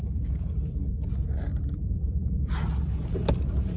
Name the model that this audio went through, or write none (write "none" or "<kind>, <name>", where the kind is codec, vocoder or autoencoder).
vocoder, BigVGAN v2